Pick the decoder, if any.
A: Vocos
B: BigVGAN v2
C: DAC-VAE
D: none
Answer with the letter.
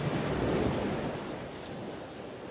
D